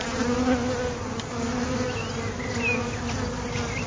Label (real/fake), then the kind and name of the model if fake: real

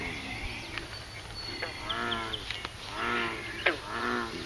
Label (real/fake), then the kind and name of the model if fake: real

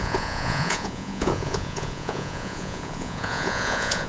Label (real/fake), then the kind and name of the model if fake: fake, vocoder, Vocos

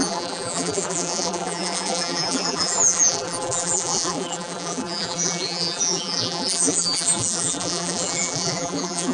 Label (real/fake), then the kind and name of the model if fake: fake, vocoder, BigVGAN v2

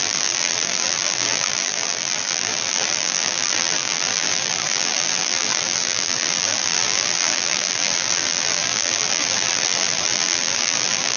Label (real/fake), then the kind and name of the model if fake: fake, vocoder, BigVGAN v2